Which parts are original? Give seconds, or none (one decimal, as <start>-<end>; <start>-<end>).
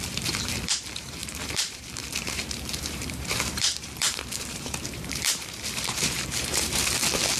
6.8-7.4